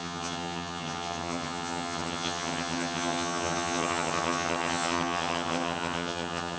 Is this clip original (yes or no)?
no